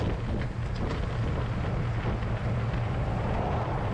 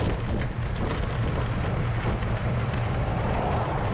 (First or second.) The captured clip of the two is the first